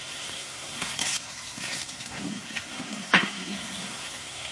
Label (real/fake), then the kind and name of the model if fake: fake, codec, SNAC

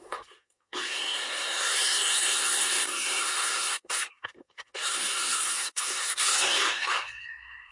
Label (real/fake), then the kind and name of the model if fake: fake, codec, SNAC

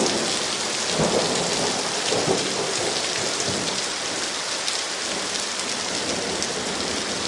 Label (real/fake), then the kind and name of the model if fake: real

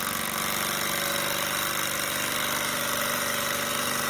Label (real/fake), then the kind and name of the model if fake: real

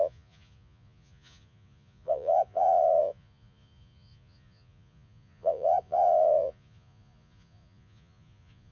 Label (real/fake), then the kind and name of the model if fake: fake, vocoder, Vocos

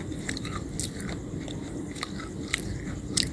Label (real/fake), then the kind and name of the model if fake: real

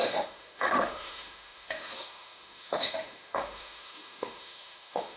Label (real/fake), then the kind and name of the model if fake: fake, autoencoder, DAC-VAE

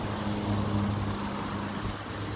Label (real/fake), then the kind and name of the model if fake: real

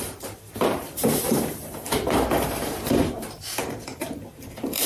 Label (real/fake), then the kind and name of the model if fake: fake, vocoder, BigVGAN v2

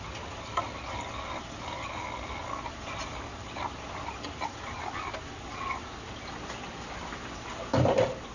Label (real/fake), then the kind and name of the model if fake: real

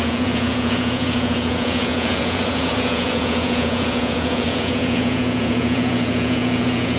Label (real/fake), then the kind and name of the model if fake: fake, vocoder, Vocos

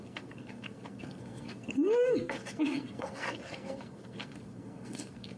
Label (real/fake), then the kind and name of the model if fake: fake, codec, SNAC